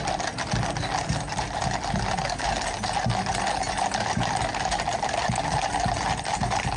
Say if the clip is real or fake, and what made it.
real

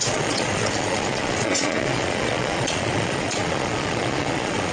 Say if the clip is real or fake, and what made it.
fake, vocoder, Vocos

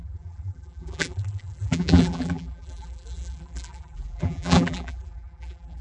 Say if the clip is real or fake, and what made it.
fake, vocoder, BigVGAN v2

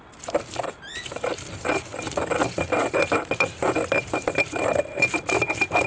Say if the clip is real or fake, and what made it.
real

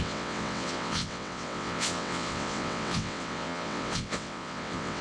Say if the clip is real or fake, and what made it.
fake, vocoder, WaveNeXt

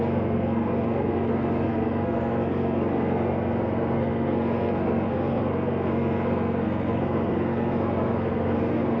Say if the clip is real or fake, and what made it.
fake, codec, SNAC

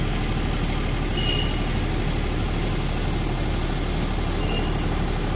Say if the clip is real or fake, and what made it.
real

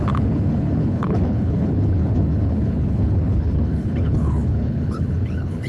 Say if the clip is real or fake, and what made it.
fake, codec, HILCodec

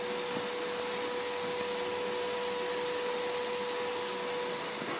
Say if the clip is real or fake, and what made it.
real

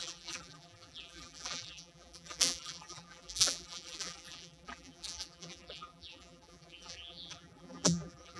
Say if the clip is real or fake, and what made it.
fake, vocoder, BigVGAN v2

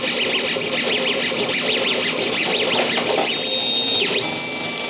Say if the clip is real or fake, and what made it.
real